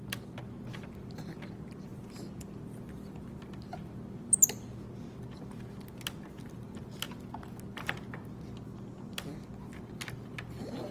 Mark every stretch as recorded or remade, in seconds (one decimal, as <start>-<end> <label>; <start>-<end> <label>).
0.0-10.9 recorded